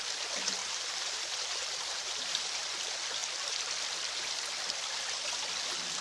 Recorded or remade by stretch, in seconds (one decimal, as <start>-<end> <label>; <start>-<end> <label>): 0.0-0.6 recorded; 0.6-2.8 remade; 2.8-6.0 recorded